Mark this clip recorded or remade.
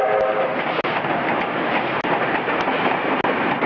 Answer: recorded